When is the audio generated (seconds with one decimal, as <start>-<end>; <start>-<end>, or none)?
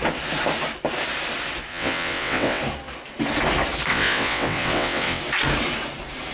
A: 1.7-2.6; 3.9-5.2